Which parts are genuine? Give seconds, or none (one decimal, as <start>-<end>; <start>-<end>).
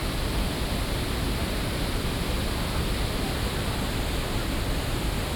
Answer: 0.0-5.4